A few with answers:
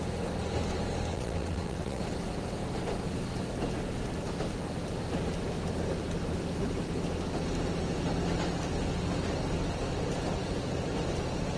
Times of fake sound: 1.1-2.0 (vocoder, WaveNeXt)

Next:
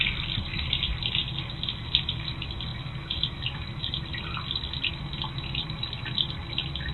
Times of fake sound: none

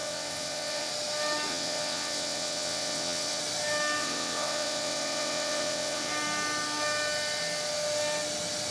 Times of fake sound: 0.0-0.9 (vocoder, WaveNeXt); 1.5-3.4; 4.0-6.1

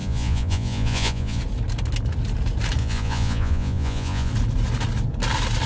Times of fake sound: 0.0-1.4 (vocoder, Vocos); 2.8-4.3

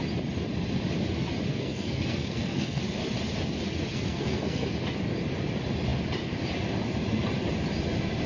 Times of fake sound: 1.5-2.8 (codec, SNAC); 3.9-4.7